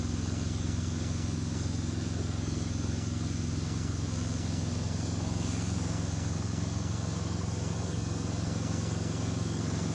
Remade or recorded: remade